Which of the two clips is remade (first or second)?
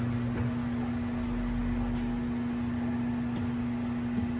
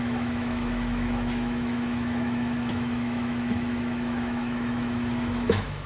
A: second